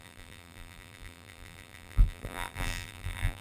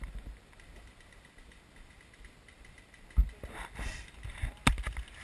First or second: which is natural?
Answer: second